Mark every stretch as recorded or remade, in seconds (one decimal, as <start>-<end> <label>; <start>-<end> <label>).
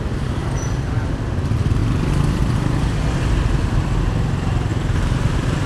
0.0-4.7 recorded; 4.7-5.7 remade